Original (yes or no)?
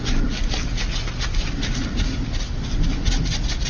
yes